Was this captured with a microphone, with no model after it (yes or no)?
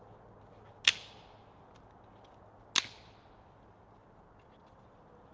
yes